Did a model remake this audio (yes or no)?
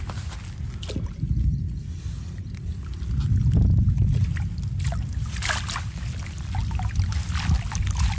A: no